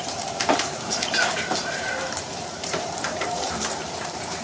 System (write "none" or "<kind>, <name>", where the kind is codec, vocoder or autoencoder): vocoder, BigVGAN v2